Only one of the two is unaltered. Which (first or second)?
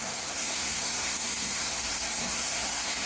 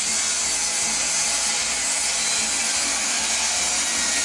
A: second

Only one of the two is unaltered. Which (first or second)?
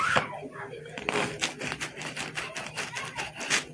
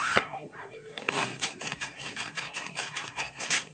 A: first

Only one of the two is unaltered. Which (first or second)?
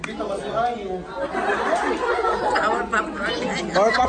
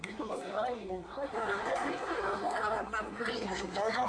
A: first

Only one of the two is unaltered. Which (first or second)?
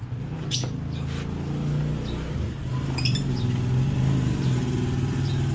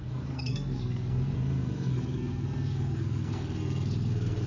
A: first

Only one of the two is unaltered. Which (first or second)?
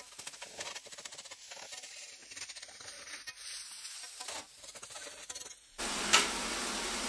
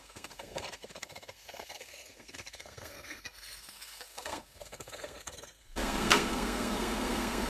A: first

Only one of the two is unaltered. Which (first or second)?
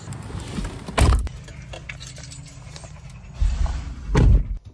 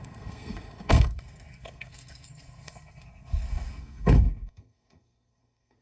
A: first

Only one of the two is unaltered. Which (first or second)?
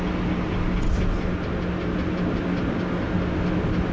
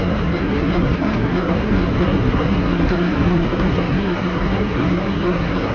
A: first